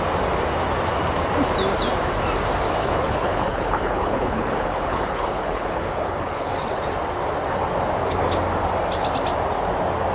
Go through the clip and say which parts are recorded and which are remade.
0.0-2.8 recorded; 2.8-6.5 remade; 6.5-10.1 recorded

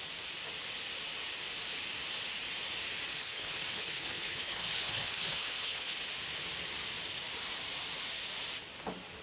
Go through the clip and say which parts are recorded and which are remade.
0.0-3.1 recorded; 3.1-6.0 remade; 6.0-9.2 recorded

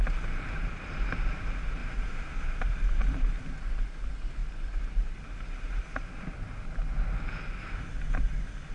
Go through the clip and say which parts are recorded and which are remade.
0.0-1.8 recorded; 1.8-3.3 remade; 3.3-4.4 recorded; 4.4-5.8 remade; 5.8-8.7 recorded